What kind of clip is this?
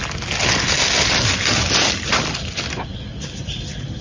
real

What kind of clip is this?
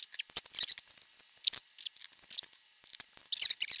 real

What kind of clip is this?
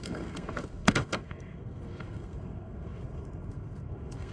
fake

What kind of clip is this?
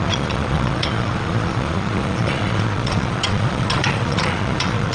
fake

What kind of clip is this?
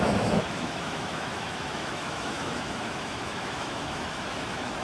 fake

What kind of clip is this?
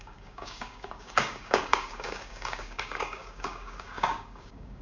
fake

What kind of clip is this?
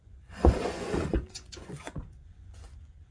fake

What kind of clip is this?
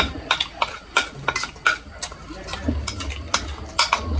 real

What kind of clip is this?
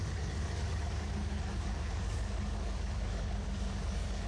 fake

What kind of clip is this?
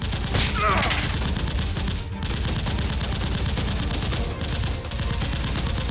real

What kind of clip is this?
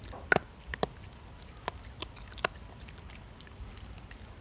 real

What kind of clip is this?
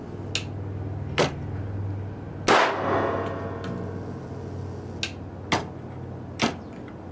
real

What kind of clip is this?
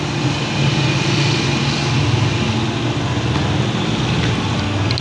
real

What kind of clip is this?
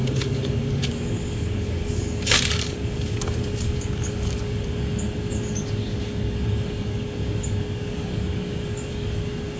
fake